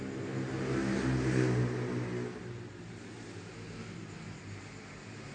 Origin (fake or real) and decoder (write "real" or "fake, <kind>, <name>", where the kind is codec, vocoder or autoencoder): real